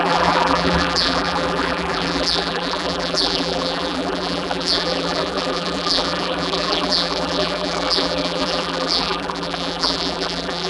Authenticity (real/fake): fake